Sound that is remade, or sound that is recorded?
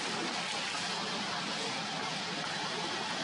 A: recorded